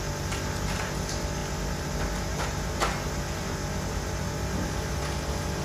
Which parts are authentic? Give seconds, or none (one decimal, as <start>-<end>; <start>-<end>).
0.0-5.6